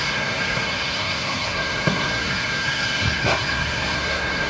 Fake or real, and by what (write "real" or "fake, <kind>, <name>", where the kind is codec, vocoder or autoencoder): fake, codec, SNAC